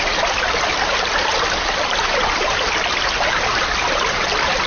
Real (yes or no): yes